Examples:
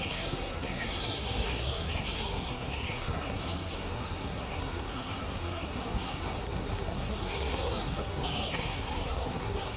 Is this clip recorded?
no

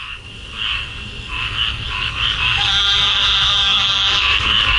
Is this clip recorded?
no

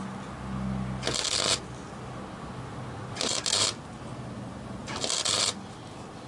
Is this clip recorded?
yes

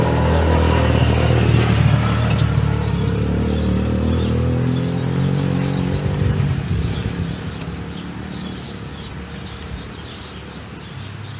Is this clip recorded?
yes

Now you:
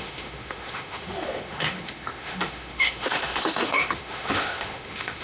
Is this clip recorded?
no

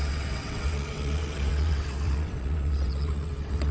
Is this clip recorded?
no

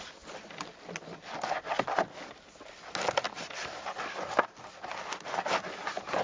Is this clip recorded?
yes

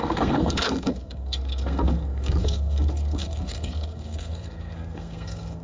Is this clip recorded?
no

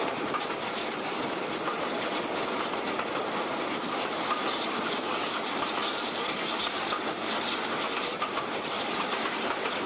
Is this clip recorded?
yes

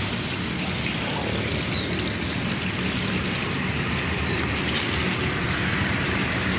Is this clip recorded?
yes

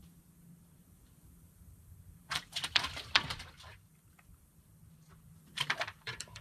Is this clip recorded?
no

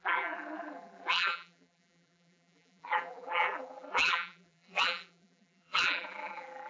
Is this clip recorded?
no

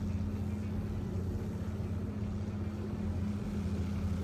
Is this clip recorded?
yes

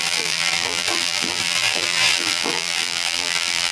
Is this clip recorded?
no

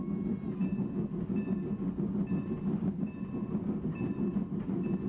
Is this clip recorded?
yes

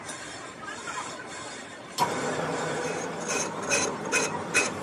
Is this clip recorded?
no